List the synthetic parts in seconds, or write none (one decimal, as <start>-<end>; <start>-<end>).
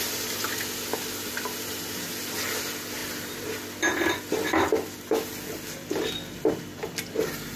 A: none